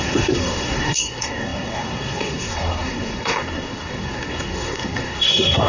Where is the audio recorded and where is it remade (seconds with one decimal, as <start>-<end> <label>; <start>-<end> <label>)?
0.0-5.7 remade